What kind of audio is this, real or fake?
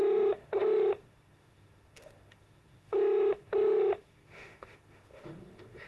fake